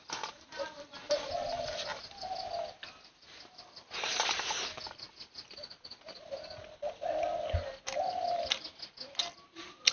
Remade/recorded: recorded